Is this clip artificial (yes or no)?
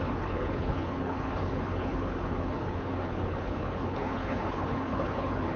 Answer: yes